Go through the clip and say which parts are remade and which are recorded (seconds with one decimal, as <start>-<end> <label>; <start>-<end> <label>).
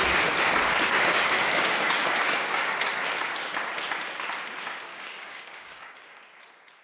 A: 0.0-0.7 recorded; 0.7-2.7 remade; 2.7-4.9 recorded; 4.9-6.2 remade; 6.2-6.8 recorded